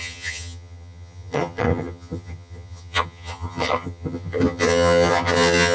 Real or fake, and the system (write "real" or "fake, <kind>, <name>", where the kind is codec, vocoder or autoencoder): fake, vocoder, HiFi-GAN